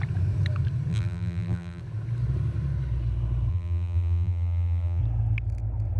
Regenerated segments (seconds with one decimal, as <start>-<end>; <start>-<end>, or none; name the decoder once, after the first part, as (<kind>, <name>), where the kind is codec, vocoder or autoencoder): 0.9-1.8 (vocoder, BigVGAN v2); 3.5-5.0